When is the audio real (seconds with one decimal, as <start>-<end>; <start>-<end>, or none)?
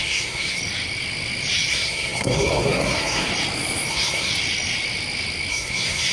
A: 0.6-1.7; 3.3-3.9; 4.3-5.5